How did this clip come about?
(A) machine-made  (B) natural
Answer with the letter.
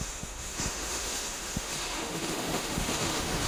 A